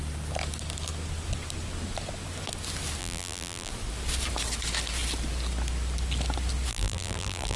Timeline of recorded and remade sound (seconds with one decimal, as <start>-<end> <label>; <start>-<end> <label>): 0.0-3.0 recorded; 3.0-3.7 remade; 3.7-6.7 recorded; 6.7-7.6 remade